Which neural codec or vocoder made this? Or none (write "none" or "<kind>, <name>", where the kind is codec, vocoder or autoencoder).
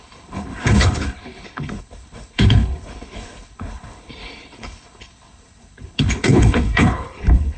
codec, HILCodec